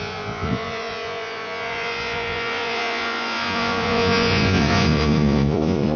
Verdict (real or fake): fake